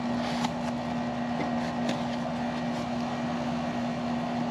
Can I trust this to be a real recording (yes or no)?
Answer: yes